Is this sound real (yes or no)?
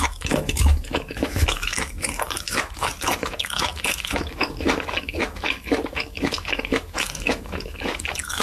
no